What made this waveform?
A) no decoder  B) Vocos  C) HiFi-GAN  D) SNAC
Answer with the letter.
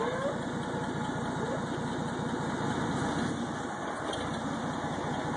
A